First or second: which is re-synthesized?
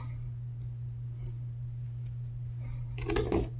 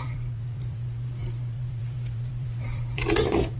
second